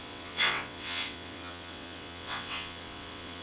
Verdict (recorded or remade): remade